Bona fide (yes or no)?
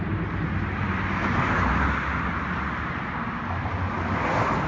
yes